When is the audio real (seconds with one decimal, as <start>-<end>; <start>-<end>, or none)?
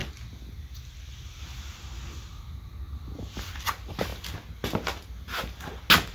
0.0-3.6; 4.1-6.1